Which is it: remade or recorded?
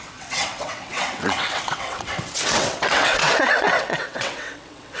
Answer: remade